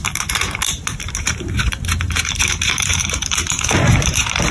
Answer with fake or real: fake